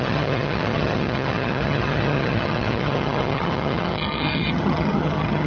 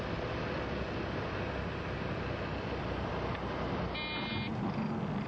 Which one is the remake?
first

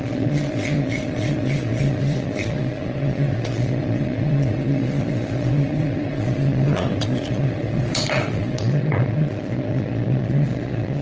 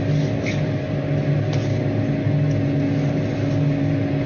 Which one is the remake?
first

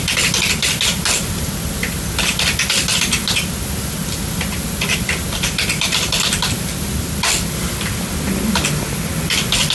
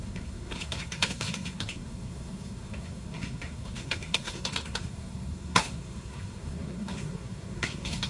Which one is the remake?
second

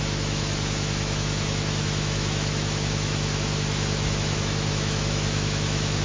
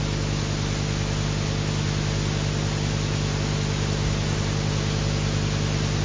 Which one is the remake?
first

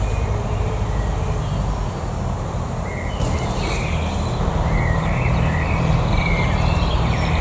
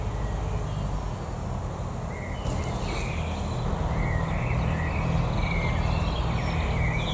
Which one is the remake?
first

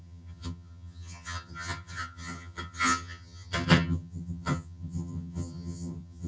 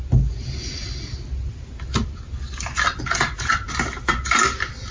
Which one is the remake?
first